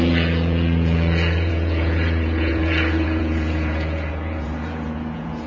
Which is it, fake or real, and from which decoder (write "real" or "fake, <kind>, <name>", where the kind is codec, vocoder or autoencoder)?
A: fake, vocoder, Vocos